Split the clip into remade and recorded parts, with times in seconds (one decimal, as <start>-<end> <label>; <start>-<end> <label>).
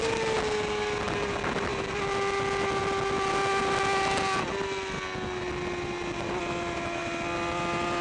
0.0-8.0 recorded